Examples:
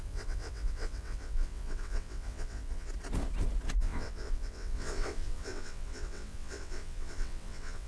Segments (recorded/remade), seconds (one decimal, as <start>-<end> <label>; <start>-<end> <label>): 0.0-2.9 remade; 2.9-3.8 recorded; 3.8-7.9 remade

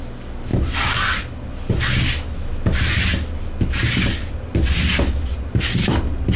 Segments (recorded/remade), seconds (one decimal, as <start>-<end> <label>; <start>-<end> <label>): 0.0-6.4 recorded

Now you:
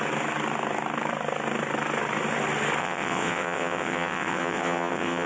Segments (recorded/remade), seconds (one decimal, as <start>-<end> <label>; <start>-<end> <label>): 0.0-2.8 recorded; 2.8-5.3 remade

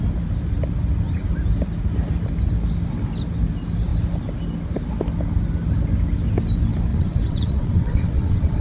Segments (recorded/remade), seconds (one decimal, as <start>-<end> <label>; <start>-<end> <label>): 0.0-6.9 recorded; 6.9-8.6 remade

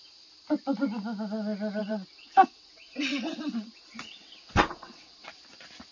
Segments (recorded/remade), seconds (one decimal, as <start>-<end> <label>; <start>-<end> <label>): 0.0-1.8 recorded; 1.8-5.3 remade; 5.3-5.9 recorded

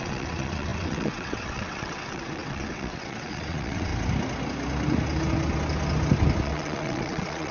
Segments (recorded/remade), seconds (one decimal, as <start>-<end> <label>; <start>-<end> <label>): 0.0-3.9 remade; 3.9-6.4 recorded; 6.4-7.5 remade